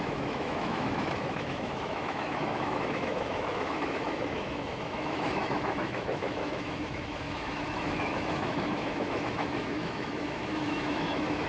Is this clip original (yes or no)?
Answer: no